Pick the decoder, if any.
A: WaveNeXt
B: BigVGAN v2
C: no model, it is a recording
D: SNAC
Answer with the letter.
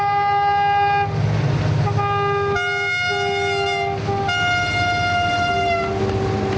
C